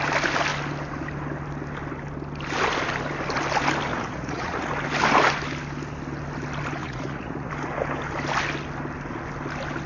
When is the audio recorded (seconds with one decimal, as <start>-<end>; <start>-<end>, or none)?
0.0-3.9; 4.7-6.8; 7.5-9.9

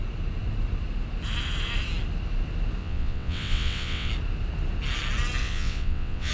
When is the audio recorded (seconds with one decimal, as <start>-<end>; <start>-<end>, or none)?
0.0-2.8; 4.1-5.4

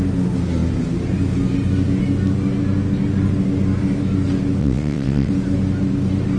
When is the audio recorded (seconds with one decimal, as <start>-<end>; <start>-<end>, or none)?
0.0-4.6; 5.3-6.4

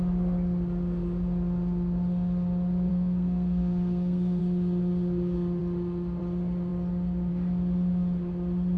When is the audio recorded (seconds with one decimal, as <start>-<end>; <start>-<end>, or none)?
0.0-2.9; 4.4-8.8

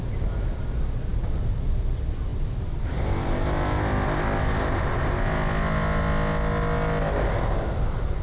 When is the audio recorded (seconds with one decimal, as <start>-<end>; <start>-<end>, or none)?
0.0-8.2

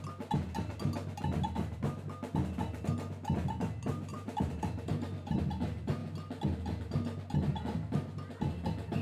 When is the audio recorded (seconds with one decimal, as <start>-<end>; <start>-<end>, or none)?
0.0-4.1; 5.4-9.0

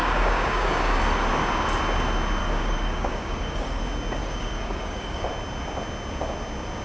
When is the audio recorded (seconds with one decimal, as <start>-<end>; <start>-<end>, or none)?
1.0-2.4; 3.8-4.2; 5.3-6.8